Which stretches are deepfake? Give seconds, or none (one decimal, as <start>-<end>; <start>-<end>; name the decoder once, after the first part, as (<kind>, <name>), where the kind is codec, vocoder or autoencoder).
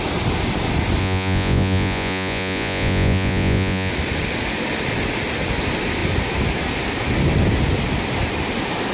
1.0-3.9 (vocoder, Vocos)